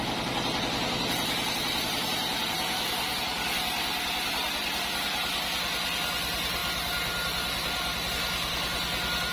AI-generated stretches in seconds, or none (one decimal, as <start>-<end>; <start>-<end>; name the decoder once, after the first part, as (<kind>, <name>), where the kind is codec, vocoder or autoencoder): none